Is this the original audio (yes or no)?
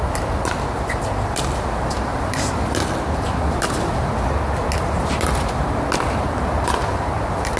yes